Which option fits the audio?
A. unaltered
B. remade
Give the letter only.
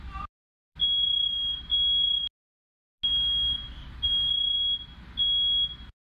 A